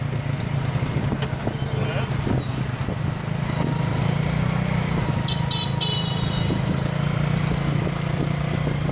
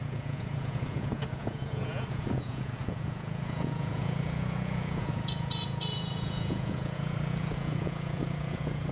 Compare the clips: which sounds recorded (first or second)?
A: first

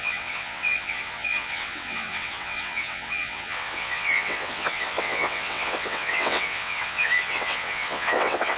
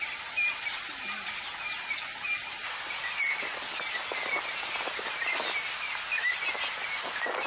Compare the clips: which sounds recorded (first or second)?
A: second